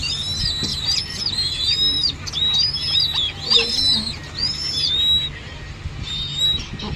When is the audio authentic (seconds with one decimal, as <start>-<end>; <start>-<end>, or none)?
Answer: 0.0-0.7; 1.2-7.0